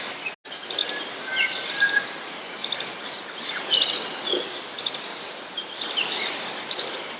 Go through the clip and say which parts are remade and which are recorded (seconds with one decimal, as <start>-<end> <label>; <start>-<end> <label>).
0.0-0.8 recorded; 0.8-1.3 remade; 1.3-2.6 recorded; 2.6-3.6 remade; 3.6-5.1 recorded; 5.1-6.3 remade; 6.3-7.2 recorded